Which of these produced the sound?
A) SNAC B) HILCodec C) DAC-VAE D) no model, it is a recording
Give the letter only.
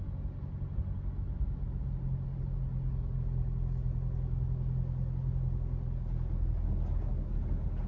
D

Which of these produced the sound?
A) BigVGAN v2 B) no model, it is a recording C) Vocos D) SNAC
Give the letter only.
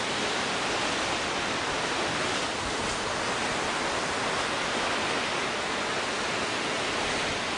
B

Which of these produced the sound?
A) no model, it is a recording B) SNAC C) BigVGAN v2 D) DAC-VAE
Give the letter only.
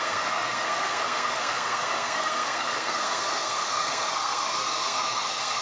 B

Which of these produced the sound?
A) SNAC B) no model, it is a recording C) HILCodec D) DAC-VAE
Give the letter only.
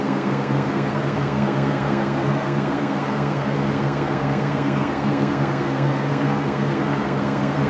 A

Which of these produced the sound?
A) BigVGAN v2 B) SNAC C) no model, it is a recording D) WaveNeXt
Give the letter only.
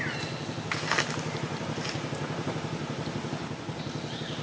C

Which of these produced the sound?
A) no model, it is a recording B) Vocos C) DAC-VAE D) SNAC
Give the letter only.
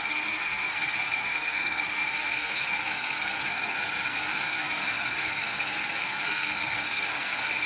D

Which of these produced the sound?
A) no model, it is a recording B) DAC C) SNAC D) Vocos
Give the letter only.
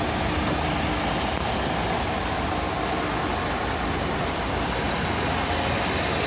A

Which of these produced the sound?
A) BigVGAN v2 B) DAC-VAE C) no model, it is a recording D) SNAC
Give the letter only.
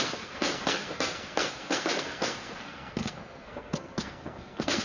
D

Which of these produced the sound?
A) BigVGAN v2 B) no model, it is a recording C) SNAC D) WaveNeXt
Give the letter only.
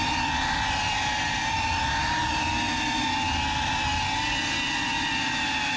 B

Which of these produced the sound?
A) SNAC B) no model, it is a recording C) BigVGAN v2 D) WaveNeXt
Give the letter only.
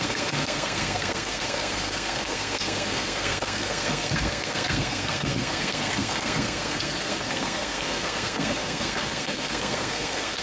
A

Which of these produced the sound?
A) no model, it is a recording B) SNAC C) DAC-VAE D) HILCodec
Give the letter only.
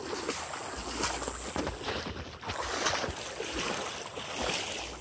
A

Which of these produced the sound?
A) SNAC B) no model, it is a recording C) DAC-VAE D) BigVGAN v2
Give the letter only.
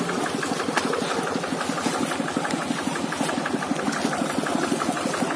B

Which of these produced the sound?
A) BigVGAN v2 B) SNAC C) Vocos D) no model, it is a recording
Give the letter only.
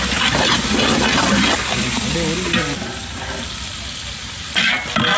D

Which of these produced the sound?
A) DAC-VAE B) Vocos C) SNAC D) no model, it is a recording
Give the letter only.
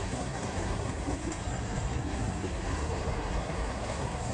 C